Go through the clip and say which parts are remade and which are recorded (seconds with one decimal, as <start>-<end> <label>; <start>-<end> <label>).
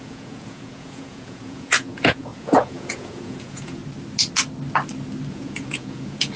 0.0-3.8 remade; 3.8-5.3 recorded; 5.3-6.4 remade